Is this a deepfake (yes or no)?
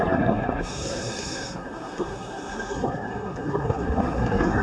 yes